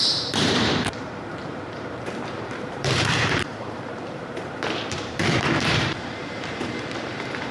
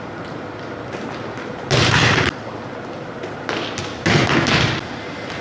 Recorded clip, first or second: second